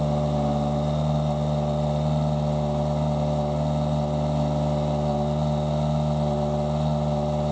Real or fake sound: real